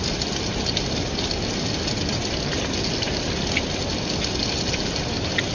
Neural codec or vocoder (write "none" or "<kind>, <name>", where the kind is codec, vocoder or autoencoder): none